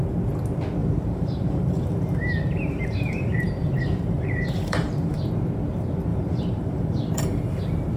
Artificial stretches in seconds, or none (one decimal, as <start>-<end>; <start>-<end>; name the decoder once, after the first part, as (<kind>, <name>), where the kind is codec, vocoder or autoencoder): 0.8-5.3 (vocoder, BigVGAN v2); 6.1-7.6